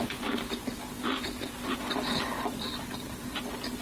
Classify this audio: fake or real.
real